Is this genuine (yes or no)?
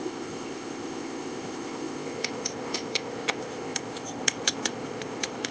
no